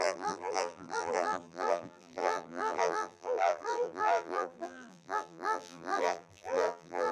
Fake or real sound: fake